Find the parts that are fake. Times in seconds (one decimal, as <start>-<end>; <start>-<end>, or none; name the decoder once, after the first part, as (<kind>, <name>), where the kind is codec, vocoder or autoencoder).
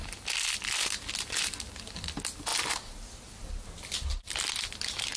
none